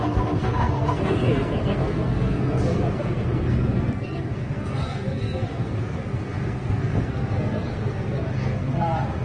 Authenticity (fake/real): fake